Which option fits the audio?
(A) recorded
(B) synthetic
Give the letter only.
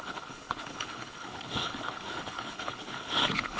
B